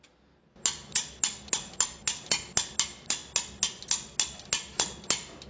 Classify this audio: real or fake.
real